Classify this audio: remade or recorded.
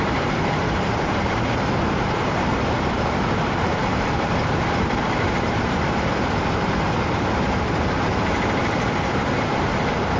remade